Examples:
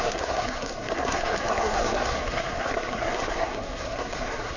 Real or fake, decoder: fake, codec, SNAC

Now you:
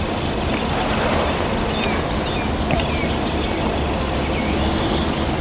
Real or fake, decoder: real